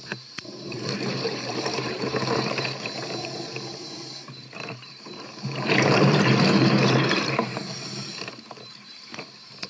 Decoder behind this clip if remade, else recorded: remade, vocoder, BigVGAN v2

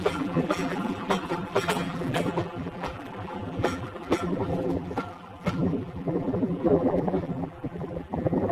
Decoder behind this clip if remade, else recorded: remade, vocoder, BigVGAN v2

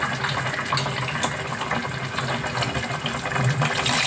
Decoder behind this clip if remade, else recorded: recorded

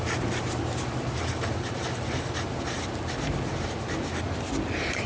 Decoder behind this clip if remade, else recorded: recorded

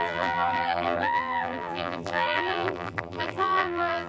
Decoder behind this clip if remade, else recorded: remade, vocoder, BigVGAN v2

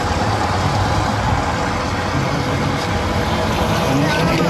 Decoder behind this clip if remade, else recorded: recorded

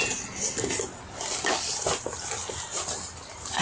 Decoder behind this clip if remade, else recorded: recorded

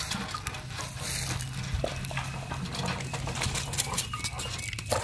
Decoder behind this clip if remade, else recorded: recorded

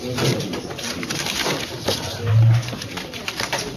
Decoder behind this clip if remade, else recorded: remade, vocoder, BigVGAN v2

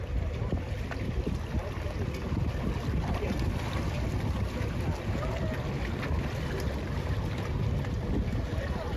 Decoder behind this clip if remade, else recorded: recorded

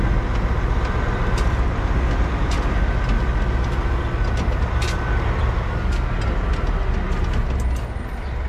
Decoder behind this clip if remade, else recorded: recorded